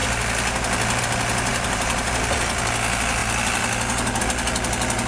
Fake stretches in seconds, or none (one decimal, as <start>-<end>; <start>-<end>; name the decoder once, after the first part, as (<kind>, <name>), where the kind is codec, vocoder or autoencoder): 1.5-2.1 (vocoder, BigVGAN v2)